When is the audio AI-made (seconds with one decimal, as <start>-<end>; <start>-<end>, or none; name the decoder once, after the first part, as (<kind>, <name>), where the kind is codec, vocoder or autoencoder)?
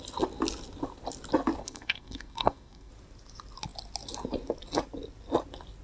1.6-2.9 (codec, SNAC)